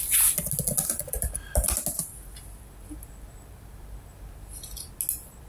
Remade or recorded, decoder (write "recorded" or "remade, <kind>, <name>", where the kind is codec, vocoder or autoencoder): recorded